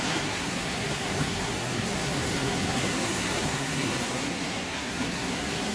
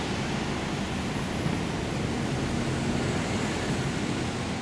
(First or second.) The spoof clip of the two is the first